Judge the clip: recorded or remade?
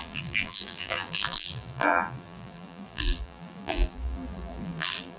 remade